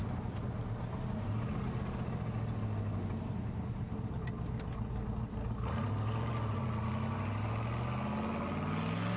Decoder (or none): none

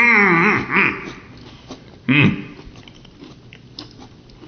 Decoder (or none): none